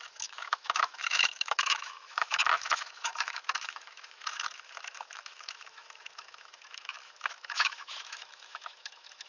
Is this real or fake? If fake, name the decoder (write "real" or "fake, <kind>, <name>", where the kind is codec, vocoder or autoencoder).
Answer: fake, autoencoder, DAC-VAE